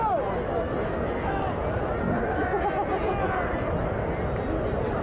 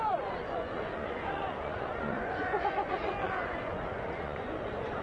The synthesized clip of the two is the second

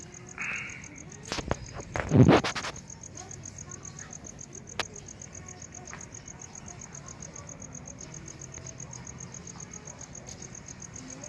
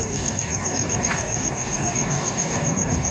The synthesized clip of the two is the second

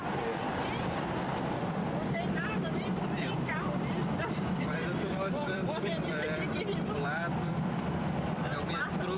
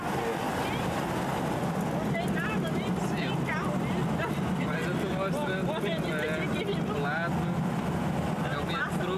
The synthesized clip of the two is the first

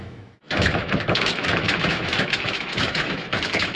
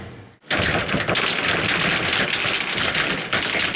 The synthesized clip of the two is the first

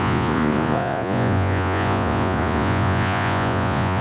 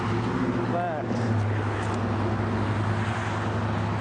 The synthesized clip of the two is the first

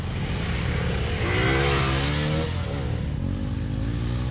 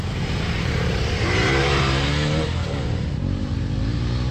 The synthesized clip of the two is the second